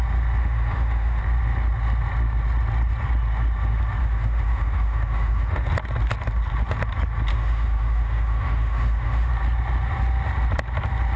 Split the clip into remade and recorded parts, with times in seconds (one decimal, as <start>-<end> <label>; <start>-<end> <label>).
0.0-0.4 recorded; 0.4-1.2 remade; 1.2-4.0 recorded; 4.0-5.7 remade; 5.7-7.3 recorded; 7.3-9.3 remade; 9.3-11.2 recorded